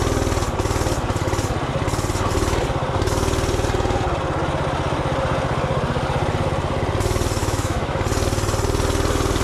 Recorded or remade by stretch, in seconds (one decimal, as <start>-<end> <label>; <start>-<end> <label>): 0.0-7.4 recorded; 7.4-8.0 remade; 8.0-9.4 recorded